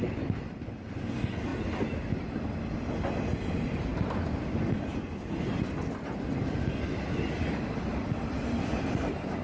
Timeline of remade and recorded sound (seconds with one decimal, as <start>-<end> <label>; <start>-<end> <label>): 0.0-9.4 recorded

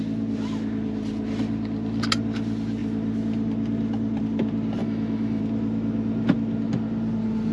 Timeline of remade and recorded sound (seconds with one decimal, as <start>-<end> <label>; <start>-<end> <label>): 0.0-4.8 recorded; 4.8-5.4 remade; 5.4-7.5 recorded

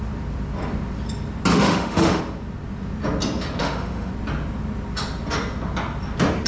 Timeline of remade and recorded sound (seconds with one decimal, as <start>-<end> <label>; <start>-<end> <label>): 0.0-1.5 recorded; 1.5-2.2 remade; 2.2-3.6 recorded; 3.6-4.1 remade; 4.1-6.5 recorded

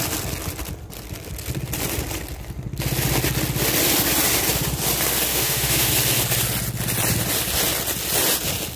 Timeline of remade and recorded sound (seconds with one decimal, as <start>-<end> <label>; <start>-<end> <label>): 0.0-5.3 recorded; 5.3-5.9 remade; 5.9-8.8 recorded

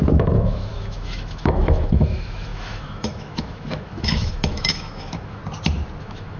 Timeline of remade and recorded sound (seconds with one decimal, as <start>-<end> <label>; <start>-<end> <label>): 0.0-5.4 remade; 5.4-6.0 recorded; 6.0-6.4 remade

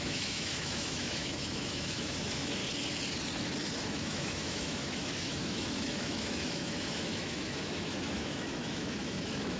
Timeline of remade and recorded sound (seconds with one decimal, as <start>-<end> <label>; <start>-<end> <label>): 0.0-2.6 remade; 2.6-3.9 recorded; 3.9-9.6 remade